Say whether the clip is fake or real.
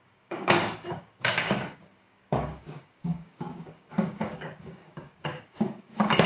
fake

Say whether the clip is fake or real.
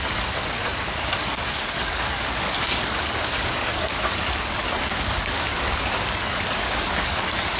fake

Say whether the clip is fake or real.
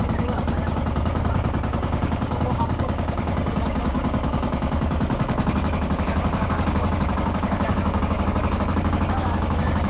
fake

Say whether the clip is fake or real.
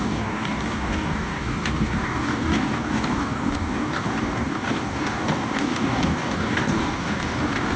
fake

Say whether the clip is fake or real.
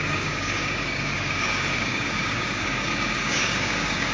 fake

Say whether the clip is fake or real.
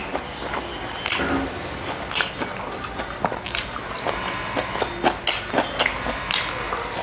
real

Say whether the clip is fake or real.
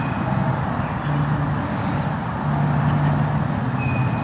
real